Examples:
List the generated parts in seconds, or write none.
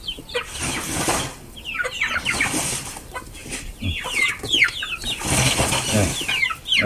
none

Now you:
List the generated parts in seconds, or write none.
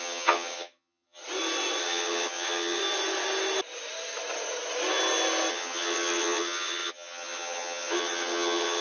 0.0-1.2 (vocoder, HiFi-GAN); 1.8-2.8; 5.5-8.8